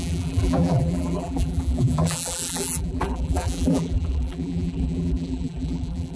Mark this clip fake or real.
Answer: fake